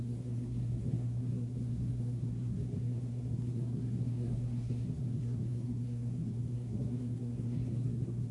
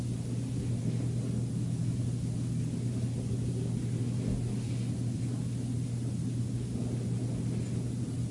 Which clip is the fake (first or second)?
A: first